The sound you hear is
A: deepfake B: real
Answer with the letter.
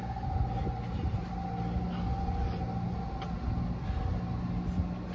B